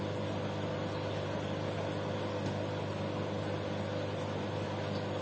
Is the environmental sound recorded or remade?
recorded